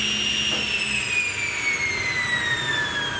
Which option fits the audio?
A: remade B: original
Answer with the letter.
B